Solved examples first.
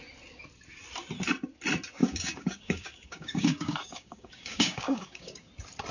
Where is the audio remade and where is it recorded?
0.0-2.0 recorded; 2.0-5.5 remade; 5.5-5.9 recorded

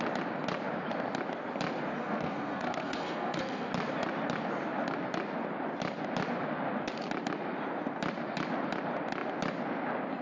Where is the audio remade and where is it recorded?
0.0-2.0 recorded; 2.0-3.7 remade; 3.7-10.2 recorded

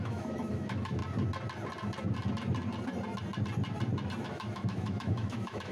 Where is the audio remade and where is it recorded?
0.0-1.0 remade; 1.0-4.2 recorded; 4.2-5.7 remade

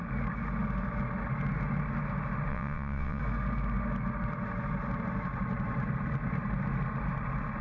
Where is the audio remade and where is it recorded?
0.0-2.5 recorded; 2.5-3.2 remade; 3.2-7.6 recorded

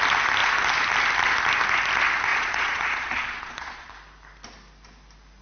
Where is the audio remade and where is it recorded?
0.0-2.3 recorded; 2.3-3.9 remade; 3.9-5.4 recorded

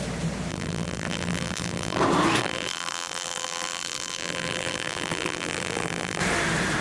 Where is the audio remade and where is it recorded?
0.0-0.5 recorded; 0.5-2.0 remade; 2.0-2.4 recorded; 2.4-6.2 remade; 6.2-6.8 recorded

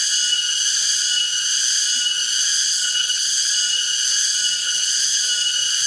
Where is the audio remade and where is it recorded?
0.0-2.7 recorded; 2.7-3.5 remade; 3.5-4.6 recorded; 4.6-5.2 remade; 5.2-5.9 recorded

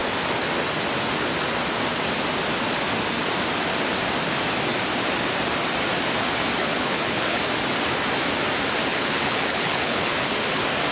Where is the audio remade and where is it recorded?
0.0-6.6 recorded; 6.6-7.4 remade; 7.4-8.9 recorded; 8.9-10.3 remade; 10.3-10.9 recorded